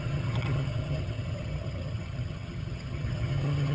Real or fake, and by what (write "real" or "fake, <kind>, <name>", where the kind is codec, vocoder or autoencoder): fake, vocoder, HiFi-GAN